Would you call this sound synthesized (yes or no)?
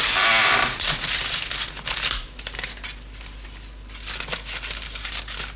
no